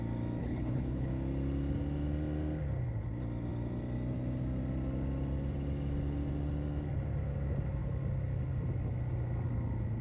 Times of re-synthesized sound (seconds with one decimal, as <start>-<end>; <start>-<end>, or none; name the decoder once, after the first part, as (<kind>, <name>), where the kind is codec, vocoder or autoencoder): 0.4-1.1 (codec, HILCodec)